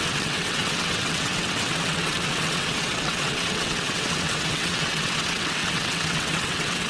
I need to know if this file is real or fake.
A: fake